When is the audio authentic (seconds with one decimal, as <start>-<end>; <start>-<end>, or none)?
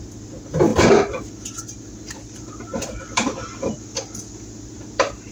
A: 0.0-0.7; 1.6-2.7